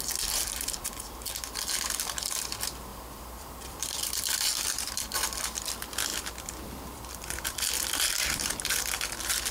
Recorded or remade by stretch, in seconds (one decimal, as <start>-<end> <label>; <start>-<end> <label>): 0.0-2.9 recorded; 2.9-5.4 remade; 5.4-6.1 recorded; 6.1-7.1 remade; 7.1-9.5 recorded